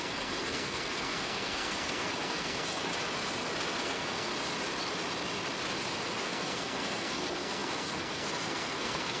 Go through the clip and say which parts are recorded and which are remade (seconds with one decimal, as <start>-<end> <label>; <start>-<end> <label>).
0.0-2.9 remade; 2.9-3.8 recorded; 3.8-4.3 remade; 4.3-6.2 recorded; 6.2-9.2 remade